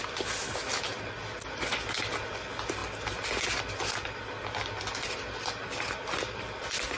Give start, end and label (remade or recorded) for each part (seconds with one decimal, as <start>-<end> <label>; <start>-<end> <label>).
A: 0.0-7.0 recorded